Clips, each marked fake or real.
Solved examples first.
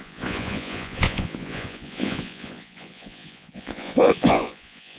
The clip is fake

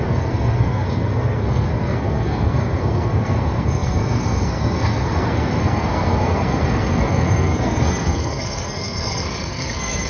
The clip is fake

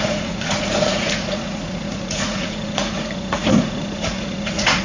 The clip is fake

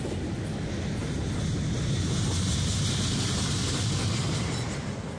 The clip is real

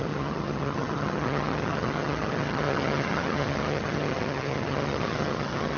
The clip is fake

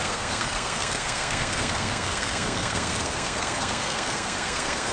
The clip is fake